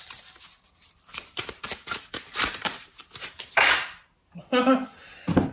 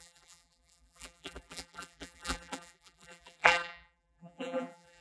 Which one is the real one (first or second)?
first